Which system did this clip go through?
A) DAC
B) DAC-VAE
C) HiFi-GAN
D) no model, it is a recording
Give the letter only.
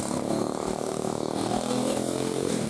A